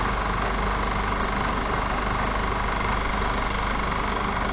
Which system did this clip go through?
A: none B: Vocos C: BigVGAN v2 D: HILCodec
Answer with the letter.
A